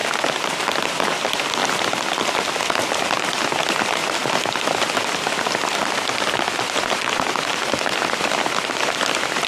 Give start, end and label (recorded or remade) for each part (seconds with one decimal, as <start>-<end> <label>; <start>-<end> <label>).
0.0-4.0 recorded; 4.0-8.7 remade; 8.7-9.5 recorded